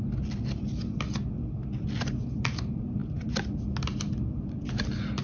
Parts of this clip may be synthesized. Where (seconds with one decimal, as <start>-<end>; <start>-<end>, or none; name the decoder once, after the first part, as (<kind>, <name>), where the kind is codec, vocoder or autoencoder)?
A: none